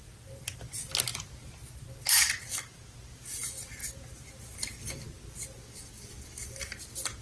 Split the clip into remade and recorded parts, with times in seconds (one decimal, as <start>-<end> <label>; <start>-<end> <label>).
0.0-7.2 recorded